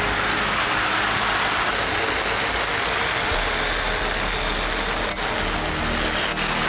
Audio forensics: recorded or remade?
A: recorded